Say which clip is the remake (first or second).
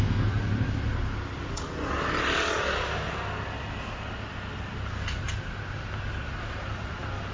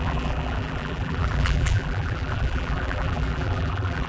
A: second